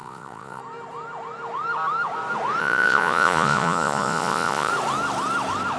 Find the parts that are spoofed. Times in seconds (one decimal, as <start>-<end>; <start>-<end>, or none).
0.0-0.6; 2.6-4.7